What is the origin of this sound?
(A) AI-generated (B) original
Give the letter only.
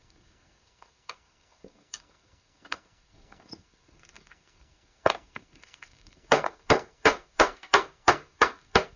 A